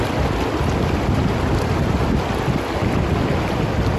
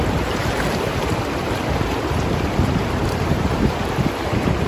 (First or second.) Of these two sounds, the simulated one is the second